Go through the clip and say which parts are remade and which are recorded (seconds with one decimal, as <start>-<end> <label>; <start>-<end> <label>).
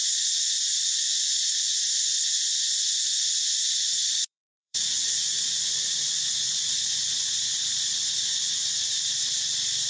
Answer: 0.0-1.7 recorded; 1.7-2.2 remade; 2.2-4.0 recorded; 4.0-8.7 remade; 8.7-9.9 recorded